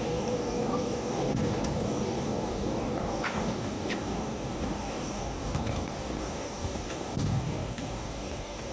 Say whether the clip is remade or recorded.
remade